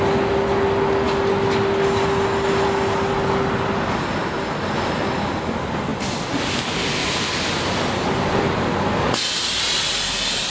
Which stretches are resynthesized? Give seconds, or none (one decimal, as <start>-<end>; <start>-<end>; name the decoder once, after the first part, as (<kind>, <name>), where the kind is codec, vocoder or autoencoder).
5.9-6.4 (vocoder, BigVGAN v2); 7.0-8.9